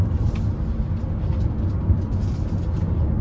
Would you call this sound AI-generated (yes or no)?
no